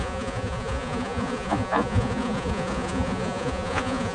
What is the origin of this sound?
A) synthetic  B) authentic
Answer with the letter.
A